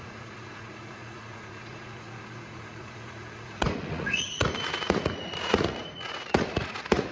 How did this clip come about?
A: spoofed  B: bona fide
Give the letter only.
A